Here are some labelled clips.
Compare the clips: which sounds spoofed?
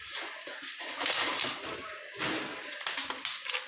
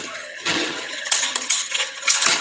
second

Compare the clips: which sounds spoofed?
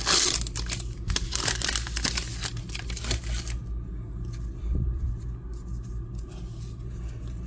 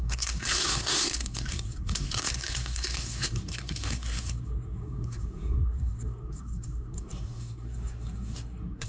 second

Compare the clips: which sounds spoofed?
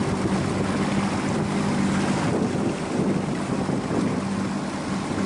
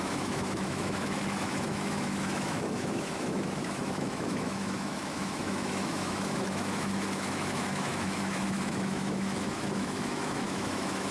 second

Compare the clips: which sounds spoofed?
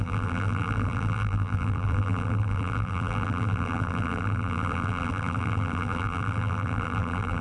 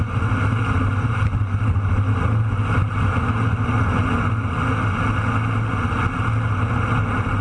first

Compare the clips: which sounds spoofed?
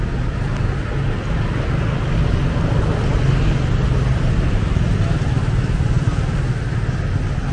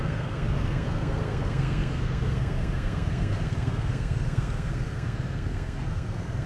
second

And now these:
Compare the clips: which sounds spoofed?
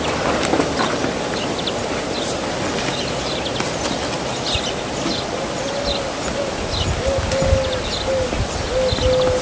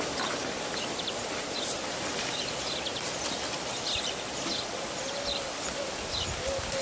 second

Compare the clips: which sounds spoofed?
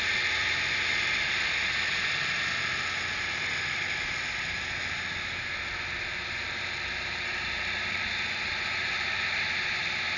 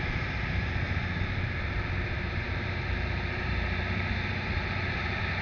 second